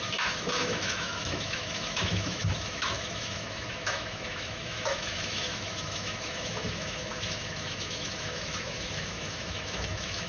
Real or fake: fake